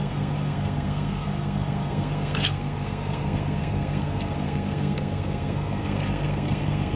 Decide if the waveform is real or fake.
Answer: fake